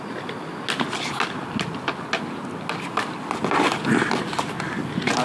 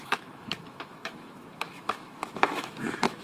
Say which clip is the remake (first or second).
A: second